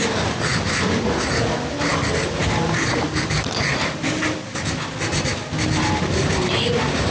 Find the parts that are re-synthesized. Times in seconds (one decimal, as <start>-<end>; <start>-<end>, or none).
none